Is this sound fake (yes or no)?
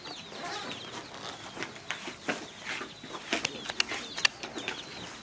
no